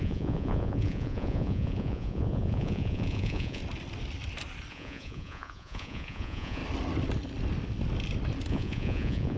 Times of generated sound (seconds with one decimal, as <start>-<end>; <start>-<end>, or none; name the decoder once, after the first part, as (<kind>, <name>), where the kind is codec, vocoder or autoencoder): 0.0-3.6 (vocoder, Vocos); 4.7-6.6; 8.5-9.4